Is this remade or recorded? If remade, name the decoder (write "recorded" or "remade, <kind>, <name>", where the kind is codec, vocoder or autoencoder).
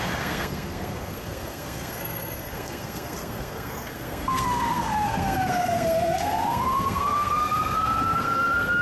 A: remade, codec, SNAC